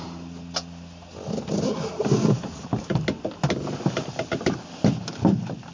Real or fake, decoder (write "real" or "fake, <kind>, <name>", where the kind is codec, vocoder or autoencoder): real